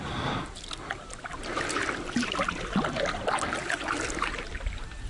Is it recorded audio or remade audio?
recorded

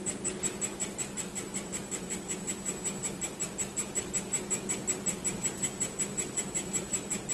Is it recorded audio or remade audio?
recorded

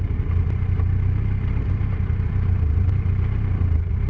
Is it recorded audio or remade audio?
remade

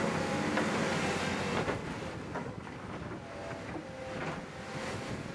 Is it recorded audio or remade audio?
recorded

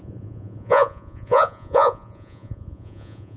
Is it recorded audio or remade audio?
remade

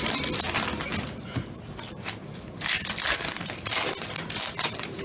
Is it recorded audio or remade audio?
recorded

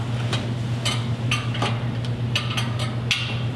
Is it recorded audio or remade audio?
recorded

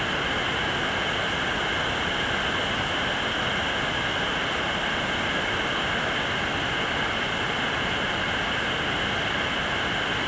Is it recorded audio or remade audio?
recorded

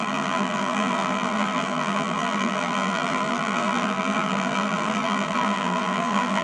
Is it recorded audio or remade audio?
remade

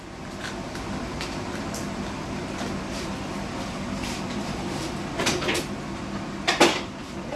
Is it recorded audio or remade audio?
remade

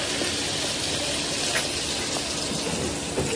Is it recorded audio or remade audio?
recorded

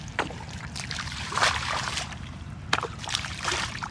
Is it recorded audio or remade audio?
remade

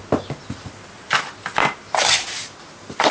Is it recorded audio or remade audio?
recorded